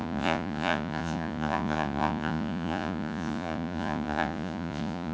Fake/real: fake